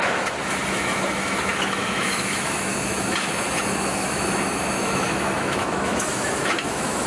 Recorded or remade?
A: remade